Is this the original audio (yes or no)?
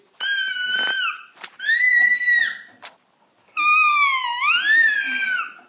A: yes